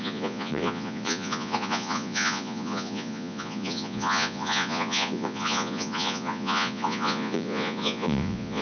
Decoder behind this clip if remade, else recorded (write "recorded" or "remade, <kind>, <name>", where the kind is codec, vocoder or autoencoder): remade, vocoder, Vocos